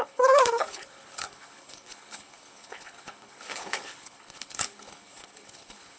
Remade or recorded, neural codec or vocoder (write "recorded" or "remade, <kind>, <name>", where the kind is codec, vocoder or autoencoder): remade, codec, HILCodec